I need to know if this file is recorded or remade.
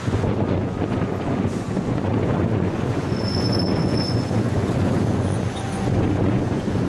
remade